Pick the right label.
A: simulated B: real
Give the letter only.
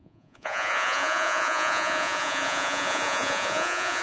A